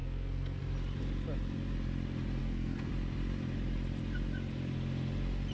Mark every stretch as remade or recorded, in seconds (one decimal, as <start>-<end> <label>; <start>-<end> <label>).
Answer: 0.0-0.6 remade; 0.6-2.4 recorded; 2.4-2.9 remade; 2.9-5.5 recorded